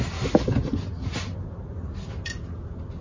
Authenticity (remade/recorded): recorded